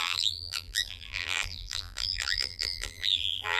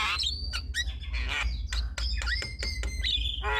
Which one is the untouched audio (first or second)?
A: second